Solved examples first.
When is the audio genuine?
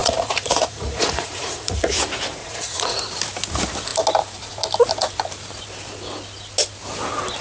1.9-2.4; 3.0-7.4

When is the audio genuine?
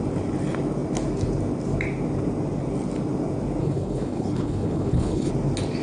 0.0-3.6; 5.3-5.8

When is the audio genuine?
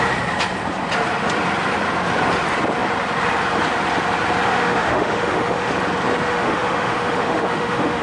0.0-4.5; 5.7-6.3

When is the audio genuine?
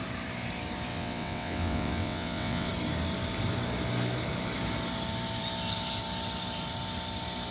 0.0-0.9; 2.7-7.5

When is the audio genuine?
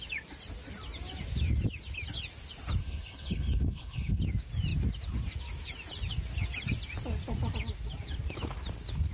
0.0-2.8; 4.2-9.1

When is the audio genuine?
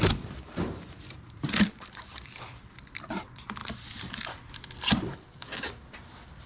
none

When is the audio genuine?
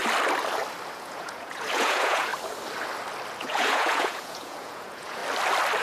0.0-0.9; 2.3-3.4; 5.2-5.8